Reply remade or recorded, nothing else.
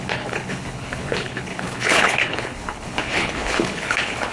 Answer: remade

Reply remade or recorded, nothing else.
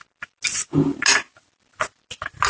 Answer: recorded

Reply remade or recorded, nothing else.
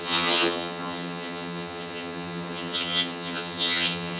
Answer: remade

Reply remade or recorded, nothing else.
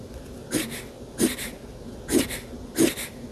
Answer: recorded